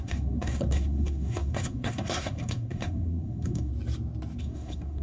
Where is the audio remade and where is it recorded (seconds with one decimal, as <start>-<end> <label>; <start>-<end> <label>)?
0.0-3.7 remade; 3.7-4.4 recorded; 4.4-5.0 remade

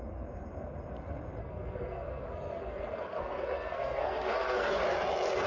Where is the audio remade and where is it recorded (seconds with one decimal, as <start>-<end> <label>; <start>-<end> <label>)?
0.0-1.4 recorded; 1.4-4.7 remade; 4.7-5.5 recorded